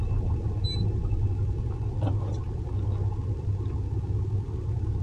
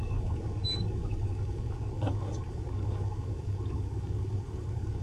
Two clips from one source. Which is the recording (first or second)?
first